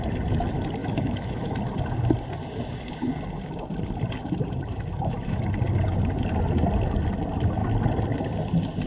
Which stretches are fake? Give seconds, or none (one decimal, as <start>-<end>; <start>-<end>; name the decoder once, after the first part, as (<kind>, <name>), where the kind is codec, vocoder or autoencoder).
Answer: 0.8-1.6 (autoencoder, DAC-VAE); 4.7-5.4